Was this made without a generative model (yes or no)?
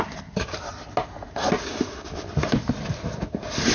yes